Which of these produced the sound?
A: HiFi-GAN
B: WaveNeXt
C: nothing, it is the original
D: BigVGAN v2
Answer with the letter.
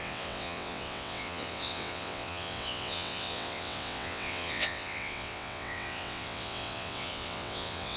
B